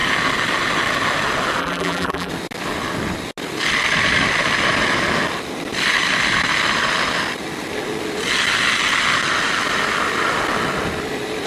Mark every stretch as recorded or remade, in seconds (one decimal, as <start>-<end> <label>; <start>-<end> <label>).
0.0-1.6 recorded; 1.6-2.3 remade; 2.3-11.5 recorded